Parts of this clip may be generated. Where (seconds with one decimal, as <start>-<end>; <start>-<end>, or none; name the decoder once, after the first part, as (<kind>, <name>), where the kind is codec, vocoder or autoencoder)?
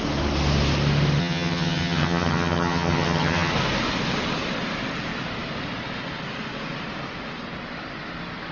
1.2-3.5 (vocoder, HiFi-GAN)